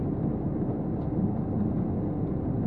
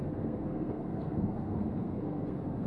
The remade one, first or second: second